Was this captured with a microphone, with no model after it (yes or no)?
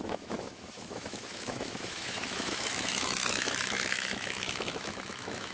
no